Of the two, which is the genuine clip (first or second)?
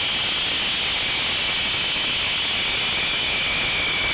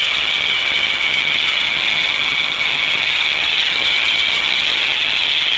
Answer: first